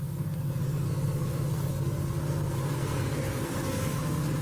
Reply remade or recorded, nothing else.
remade